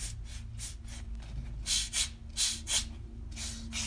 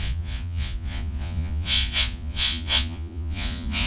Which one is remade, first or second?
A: second